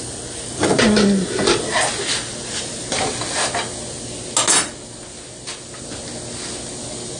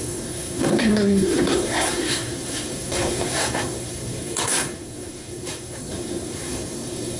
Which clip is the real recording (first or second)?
first